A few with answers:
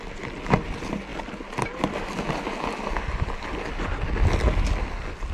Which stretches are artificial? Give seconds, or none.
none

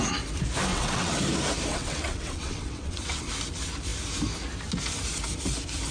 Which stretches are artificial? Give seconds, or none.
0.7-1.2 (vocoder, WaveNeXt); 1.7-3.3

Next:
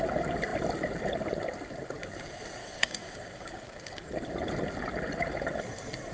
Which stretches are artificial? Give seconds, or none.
2.6-4.1 (codec, DAC)

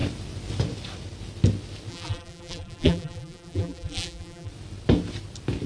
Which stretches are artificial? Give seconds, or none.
1.9-4.5 (vocoder, BigVGAN v2)

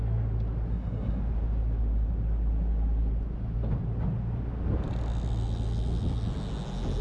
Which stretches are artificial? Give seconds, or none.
0.7-1.2 (codec, SNAC)

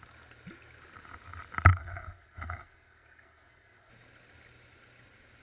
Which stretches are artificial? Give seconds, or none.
1.7-3.9 (codec, SNAC)

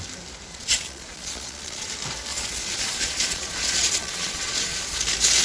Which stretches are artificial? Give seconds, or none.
0.5-1.9 (vocoder, Vocos); 2.3-5.0